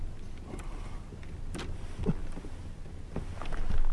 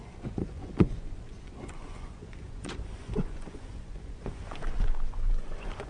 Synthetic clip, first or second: second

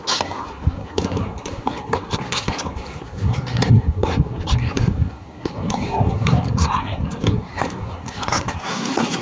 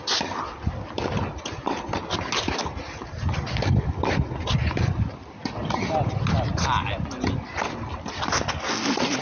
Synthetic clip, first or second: first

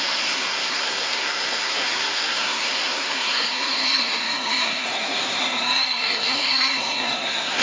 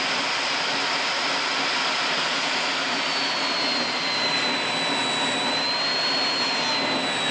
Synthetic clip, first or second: first